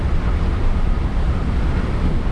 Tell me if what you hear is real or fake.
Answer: fake